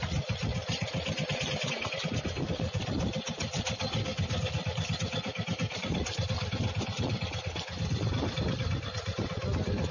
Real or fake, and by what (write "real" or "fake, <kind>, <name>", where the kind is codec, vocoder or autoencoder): real